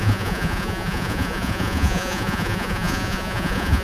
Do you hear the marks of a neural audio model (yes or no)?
yes